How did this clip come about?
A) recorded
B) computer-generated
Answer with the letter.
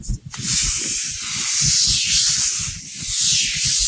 A